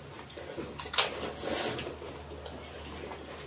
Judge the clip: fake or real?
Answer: real